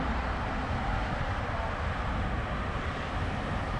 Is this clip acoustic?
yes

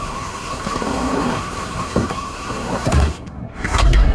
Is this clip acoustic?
no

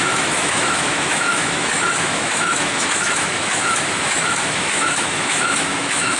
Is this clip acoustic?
no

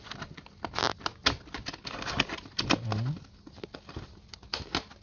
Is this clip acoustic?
yes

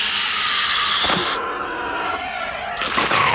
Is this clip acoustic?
yes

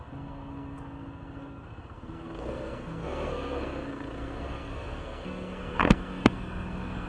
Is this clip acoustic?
no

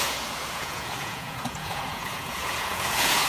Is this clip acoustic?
no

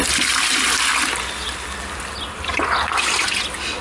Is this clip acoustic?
yes